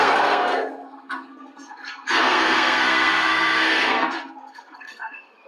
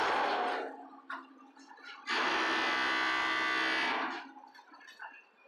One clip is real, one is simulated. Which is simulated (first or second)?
first